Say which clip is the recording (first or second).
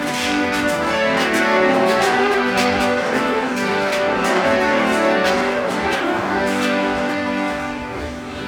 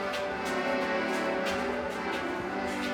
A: second